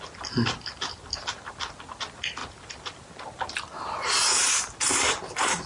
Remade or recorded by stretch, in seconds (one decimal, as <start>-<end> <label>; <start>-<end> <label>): 0.0-5.7 recorded